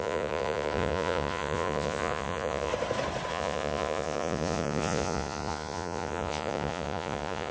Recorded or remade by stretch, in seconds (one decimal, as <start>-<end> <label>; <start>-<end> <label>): 0.0-2.7 remade; 2.7-3.3 recorded; 3.3-7.5 remade